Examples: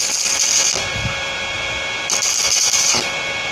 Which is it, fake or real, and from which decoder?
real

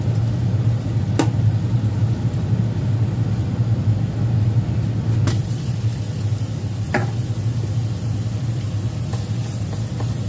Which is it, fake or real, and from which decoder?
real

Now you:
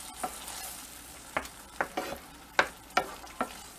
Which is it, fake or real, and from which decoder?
real